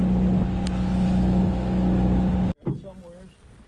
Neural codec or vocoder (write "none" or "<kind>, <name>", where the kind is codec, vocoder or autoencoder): none